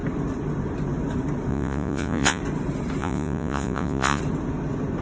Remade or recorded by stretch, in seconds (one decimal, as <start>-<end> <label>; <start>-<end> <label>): 0.0-1.5 recorded; 1.5-2.4 remade; 2.4-3.0 recorded; 3.0-4.2 remade; 4.2-5.0 recorded